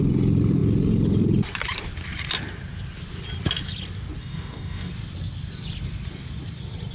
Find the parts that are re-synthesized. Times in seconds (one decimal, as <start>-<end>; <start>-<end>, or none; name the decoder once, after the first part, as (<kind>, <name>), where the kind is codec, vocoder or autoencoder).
4.2-4.9 (codec, DAC)